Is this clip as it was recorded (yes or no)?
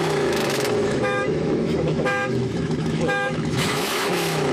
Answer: no